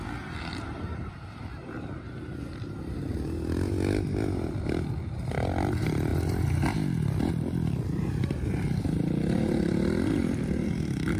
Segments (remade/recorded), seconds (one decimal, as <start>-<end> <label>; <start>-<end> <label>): 0.0-0.5 recorded; 0.5-2.8 remade; 2.8-11.2 recorded

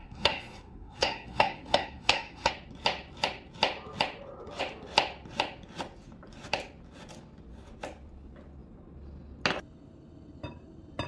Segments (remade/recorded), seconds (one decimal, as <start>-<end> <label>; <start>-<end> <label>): 0.0-2.5 remade; 2.5-11.1 recorded

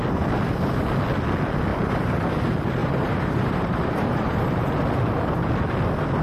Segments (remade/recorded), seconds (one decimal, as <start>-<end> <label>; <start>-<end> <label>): 0.0-1.7 recorded; 1.7-2.4 remade; 2.4-2.8 recorded; 2.8-4.7 remade; 4.7-6.2 recorded

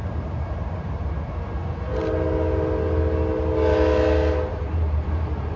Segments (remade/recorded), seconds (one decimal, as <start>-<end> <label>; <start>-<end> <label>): 0.0-1.3 remade; 1.3-4.5 recorded; 4.5-5.6 remade

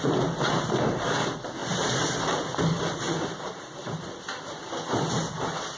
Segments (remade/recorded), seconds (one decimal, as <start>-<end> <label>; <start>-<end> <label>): 0.0-5.8 recorded

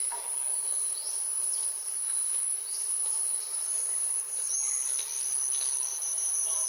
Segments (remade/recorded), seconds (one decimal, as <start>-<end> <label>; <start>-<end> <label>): 0.0-0.5 recorded; 0.5-4.5 remade; 4.5-5.9 recorded; 5.9-6.7 remade

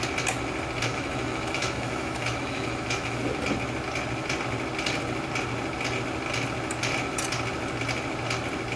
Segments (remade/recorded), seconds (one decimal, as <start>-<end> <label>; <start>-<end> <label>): 0.0-0.9 recorded; 0.9-3.2 remade; 3.2-8.8 recorded

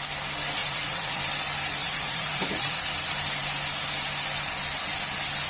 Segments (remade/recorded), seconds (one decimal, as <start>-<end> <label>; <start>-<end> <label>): 0.0-0.6 recorded; 0.6-1.2 remade; 1.2-1.8 recorded; 1.8-2.8 remade; 2.8-5.5 recorded